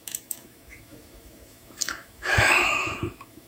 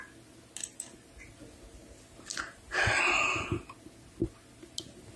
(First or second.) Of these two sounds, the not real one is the first